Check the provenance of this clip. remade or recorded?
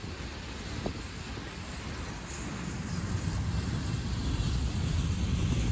recorded